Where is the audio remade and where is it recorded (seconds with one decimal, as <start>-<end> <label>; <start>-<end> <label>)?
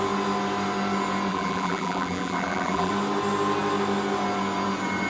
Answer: 0.0-1.3 recorded; 1.3-2.9 remade; 2.9-5.1 recorded